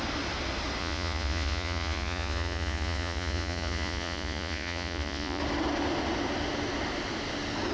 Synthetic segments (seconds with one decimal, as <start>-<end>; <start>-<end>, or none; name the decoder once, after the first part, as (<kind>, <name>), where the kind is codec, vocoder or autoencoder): 0.8-5.4 (vocoder, Vocos)